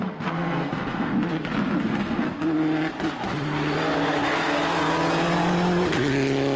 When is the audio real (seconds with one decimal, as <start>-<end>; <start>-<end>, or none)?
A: 1.1-1.8; 2.3-6.6